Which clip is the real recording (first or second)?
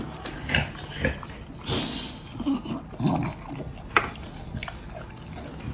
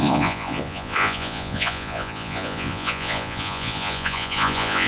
first